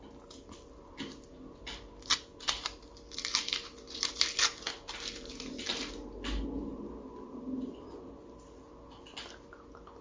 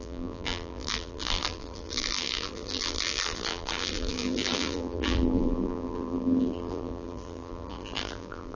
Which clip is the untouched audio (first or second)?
first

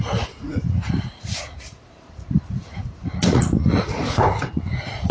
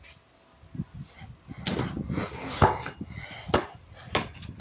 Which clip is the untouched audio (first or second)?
second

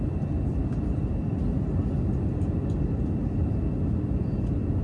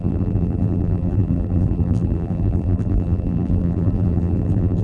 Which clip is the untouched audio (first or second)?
first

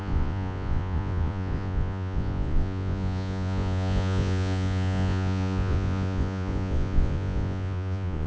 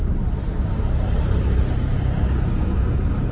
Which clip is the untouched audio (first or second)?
second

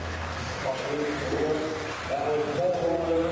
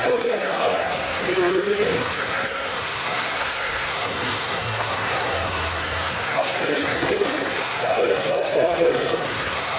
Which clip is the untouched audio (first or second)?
first